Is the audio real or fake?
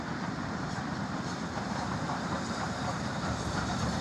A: fake